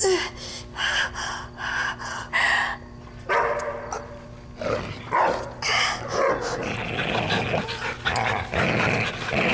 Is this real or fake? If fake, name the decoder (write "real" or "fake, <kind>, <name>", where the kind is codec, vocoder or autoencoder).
real